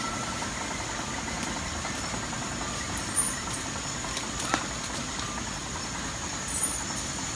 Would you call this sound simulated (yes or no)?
no